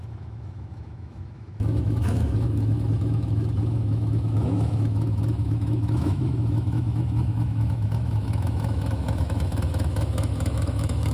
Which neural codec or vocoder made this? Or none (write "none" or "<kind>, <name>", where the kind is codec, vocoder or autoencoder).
autoencoder, DAC-VAE